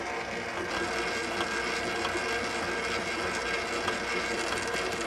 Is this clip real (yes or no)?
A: yes